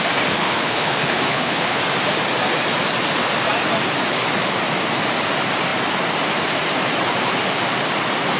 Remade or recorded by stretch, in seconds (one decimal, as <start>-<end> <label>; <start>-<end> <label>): 0.0-0.4 recorded; 0.4-1.8 remade; 1.8-8.4 recorded